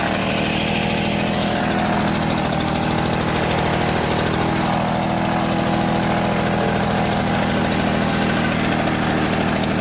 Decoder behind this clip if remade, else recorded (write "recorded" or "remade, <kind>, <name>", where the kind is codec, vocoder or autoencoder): recorded